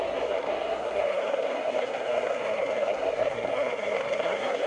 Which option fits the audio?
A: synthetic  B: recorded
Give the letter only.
A